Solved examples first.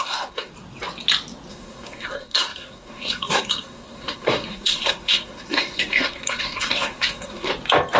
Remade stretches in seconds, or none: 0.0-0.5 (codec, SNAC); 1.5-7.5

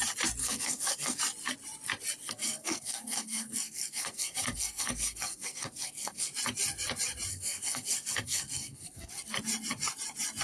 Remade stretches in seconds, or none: 0.4-1.2 (codec, SNAC); 2.2-6.3; 7.3-9.1

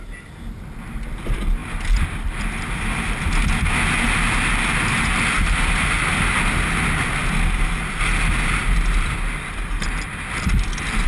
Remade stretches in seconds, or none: none